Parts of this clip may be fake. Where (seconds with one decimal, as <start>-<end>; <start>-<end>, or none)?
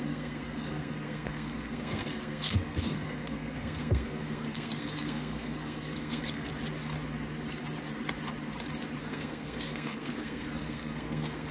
0.0-6.5; 9.0-11.5